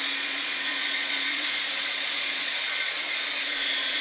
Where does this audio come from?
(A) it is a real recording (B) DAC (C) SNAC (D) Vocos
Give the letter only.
D